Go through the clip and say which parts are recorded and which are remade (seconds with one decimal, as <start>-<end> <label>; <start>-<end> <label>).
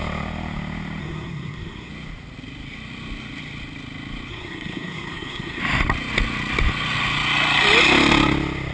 0.0-1.0 recorded; 1.0-1.9 remade; 1.9-4.3 recorded; 4.3-5.6 remade; 5.6-8.7 recorded